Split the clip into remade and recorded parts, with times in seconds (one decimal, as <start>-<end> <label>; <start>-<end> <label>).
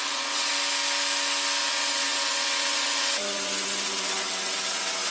0.0-0.5 remade; 0.5-1.6 recorded; 1.6-5.1 remade